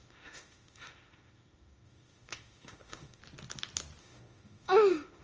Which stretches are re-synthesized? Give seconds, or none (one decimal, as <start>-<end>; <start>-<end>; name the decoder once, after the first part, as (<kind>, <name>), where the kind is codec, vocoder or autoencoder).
0.0-3.2 (autoencoder, DAC-VAE); 4.0-5.2